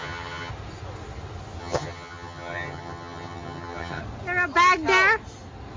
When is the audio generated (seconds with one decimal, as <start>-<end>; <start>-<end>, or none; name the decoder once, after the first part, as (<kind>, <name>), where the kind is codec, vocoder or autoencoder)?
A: 0.0-0.5 (vocoder, HiFi-GAN); 1.6-4.0